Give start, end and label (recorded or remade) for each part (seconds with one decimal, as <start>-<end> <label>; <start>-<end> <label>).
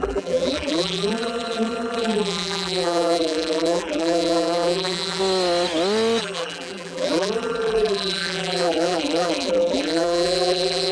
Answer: 0.0-5.2 remade; 5.2-6.2 recorded; 6.2-10.9 remade